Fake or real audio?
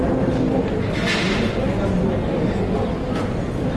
real